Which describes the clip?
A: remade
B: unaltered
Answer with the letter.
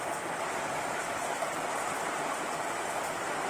A